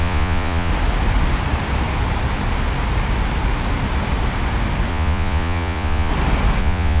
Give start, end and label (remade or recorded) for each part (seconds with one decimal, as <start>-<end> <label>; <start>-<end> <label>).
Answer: 0.0-0.7 remade; 0.7-4.9 recorded; 4.9-6.1 remade; 6.1-6.6 recorded; 6.6-7.0 remade